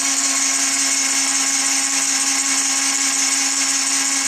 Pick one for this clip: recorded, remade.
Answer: recorded